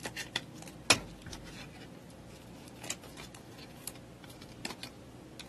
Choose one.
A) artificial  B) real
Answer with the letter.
B